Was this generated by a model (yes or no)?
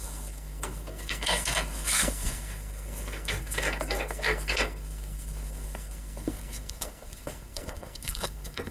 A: yes